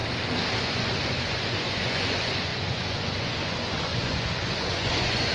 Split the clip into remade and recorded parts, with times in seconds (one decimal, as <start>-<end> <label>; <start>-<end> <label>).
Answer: 0.0-0.6 recorded; 0.6-5.3 remade